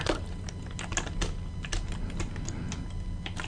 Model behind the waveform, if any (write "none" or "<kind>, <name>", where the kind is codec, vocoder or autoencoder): none